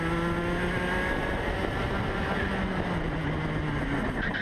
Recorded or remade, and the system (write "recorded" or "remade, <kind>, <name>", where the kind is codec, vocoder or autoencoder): recorded